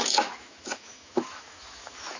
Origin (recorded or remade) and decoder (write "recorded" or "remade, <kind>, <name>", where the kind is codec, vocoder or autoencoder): remade, autoencoder, DAC-VAE